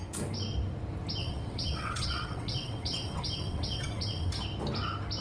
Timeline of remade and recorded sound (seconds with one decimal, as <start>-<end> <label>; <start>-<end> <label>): 0.0-1.2 recorded; 1.2-4.3 remade; 4.3-5.2 recorded